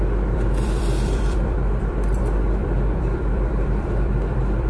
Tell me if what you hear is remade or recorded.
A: remade